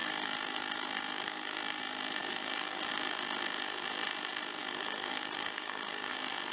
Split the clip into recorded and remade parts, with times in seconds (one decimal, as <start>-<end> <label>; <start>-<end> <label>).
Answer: 0.0-1.8 remade; 1.8-2.2 recorded; 2.2-2.9 remade; 2.9-4.6 recorded; 4.6-6.1 remade; 6.1-6.5 recorded